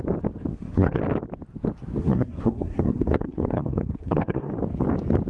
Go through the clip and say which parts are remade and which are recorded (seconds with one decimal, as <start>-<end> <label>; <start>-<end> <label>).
0.0-0.5 recorded; 0.5-1.0 remade; 1.0-2.0 recorded; 2.0-4.5 remade; 4.5-5.3 recorded